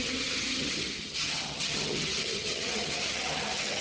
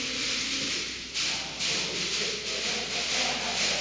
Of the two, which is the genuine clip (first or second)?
second